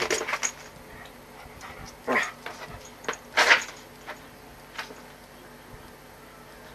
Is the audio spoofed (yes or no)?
no